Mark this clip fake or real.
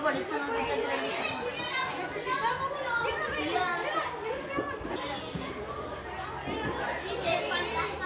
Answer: real